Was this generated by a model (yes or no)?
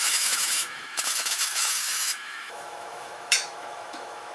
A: yes